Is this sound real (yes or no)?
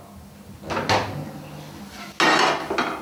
yes